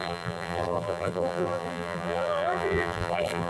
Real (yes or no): no